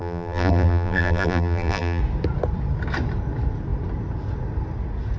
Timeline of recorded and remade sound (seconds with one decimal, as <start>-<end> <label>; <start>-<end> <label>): 0.0-2.0 remade; 2.0-5.2 recorded